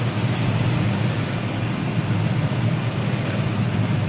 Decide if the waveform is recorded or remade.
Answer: recorded